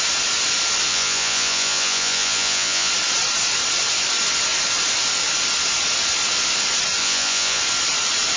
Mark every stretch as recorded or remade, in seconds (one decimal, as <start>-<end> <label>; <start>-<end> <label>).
0.0-0.9 recorded; 0.9-2.9 remade; 2.9-7.0 recorded; 7.0-7.6 remade; 7.6-8.4 recorded